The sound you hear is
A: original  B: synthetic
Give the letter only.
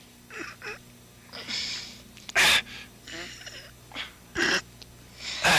A